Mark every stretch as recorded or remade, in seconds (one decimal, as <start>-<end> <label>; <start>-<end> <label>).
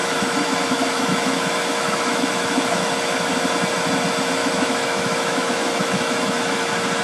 0.0-3.3 remade; 3.3-4.4 recorded; 4.4-6.6 remade; 6.6-7.0 recorded